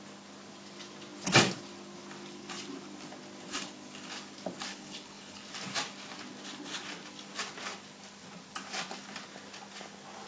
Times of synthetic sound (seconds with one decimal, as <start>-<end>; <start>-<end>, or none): 4.7-5.4

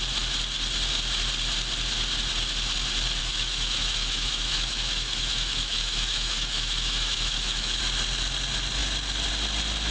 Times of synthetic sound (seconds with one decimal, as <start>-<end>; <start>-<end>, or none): 3.2-7.8

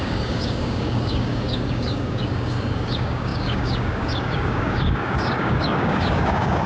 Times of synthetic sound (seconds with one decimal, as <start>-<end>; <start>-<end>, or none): 0.0-6.7

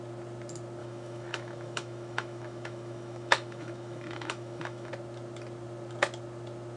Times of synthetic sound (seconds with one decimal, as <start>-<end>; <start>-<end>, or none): 0.8-4.9

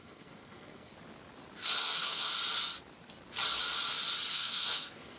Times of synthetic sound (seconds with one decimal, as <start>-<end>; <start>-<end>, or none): 0.0-0.9; 1.8-2.3; 4.3-5.2